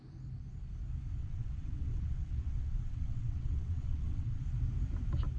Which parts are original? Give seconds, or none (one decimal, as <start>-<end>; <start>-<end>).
0.0-1.2; 4.4-5.4